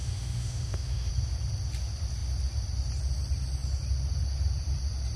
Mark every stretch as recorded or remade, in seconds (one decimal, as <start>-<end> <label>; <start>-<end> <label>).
0.0-1.1 remade; 1.1-5.2 recorded